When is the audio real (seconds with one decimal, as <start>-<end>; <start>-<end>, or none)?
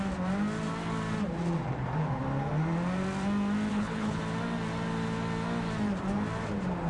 0.0-3.7; 4.2-6.9